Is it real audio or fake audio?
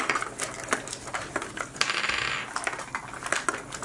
real